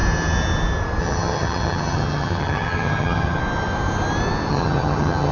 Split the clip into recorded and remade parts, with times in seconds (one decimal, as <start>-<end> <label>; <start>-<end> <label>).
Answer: 0.0-1.0 recorded; 1.0-3.4 remade; 3.4-4.5 recorded; 4.5-5.3 remade